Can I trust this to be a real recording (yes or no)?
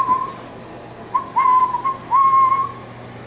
yes